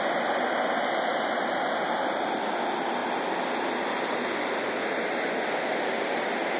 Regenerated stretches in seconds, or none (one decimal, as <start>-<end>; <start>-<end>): 5.7-6.6